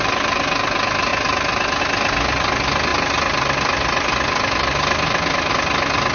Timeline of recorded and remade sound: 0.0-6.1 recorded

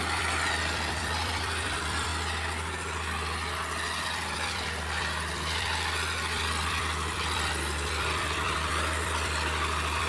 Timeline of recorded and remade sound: 0.0-2.1 remade; 2.1-4.0 recorded; 4.0-10.1 remade

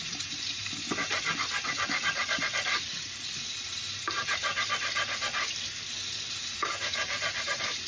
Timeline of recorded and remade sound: 0.0-0.6 remade; 0.6-2.1 recorded; 2.1-2.5 remade; 2.5-3.6 recorded; 3.6-4.4 remade; 4.4-6.3 recorded; 6.3-7.9 remade